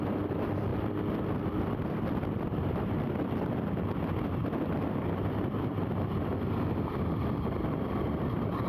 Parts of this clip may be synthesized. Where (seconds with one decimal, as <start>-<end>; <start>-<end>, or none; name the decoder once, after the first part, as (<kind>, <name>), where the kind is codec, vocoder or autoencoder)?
0.0-8.7 (vocoder, BigVGAN v2)